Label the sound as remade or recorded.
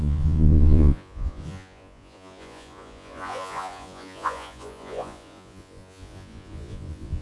remade